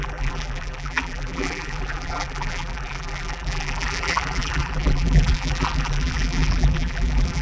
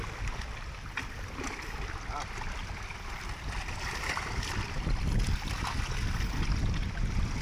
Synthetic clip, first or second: first